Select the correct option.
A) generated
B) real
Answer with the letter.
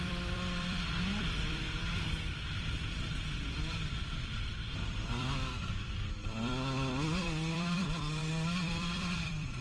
A